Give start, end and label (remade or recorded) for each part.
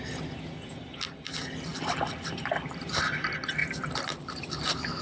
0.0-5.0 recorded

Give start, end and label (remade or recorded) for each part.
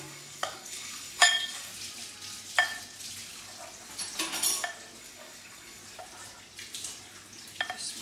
0.0-1.7 remade; 1.7-5.0 recorded; 5.0-5.8 remade; 5.8-8.0 recorded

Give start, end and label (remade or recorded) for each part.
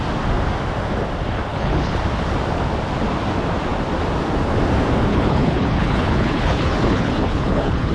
0.0-1.5 recorded; 1.5-2.0 remade; 2.0-5.1 recorded; 5.1-7.9 remade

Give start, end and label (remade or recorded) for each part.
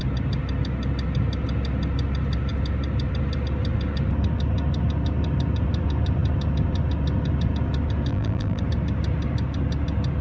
0.0-8.1 recorded; 8.1-8.6 remade; 8.6-10.2 recorded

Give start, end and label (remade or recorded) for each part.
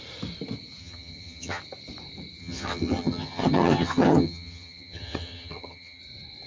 0.0-0.8 recorded; 0.8-1.6 remade; 1.6-2.4 recorded; 2.4-6.0 remade; 6.0-6.5 recorded